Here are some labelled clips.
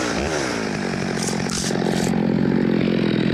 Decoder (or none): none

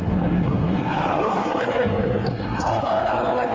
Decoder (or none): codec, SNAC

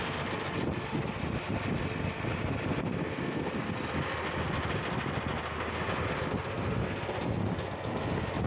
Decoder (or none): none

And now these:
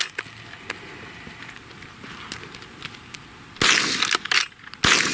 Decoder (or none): none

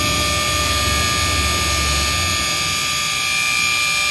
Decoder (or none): none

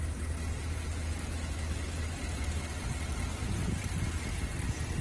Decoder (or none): none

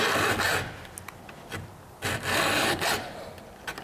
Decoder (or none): none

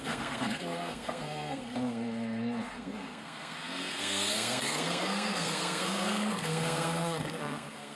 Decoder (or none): codec, SNAC